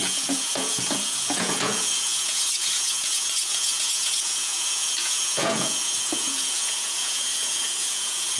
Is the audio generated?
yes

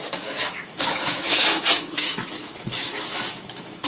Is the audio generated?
yes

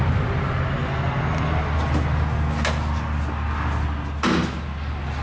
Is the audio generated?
no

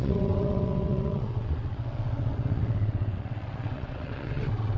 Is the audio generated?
yes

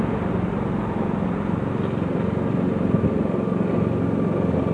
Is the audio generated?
no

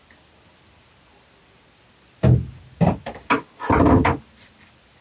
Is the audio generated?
no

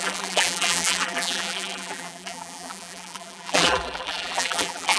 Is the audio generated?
yes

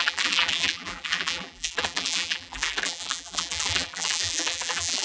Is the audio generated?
yes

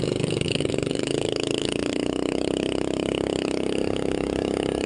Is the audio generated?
yes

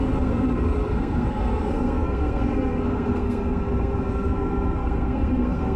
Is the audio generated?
yes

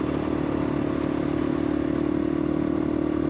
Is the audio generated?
no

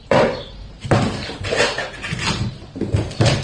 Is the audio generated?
yes